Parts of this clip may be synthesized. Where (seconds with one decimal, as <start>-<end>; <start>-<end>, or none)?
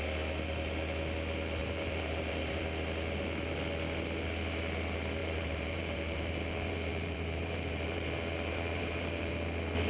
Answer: 1.6-2.6; 5.2-9.3